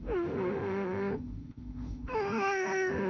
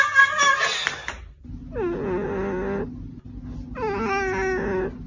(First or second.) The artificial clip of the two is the first